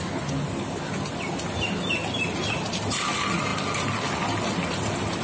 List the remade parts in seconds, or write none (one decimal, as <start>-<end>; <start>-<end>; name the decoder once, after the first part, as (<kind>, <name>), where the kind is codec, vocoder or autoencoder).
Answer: none